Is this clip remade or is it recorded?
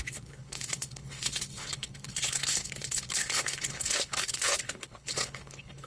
remade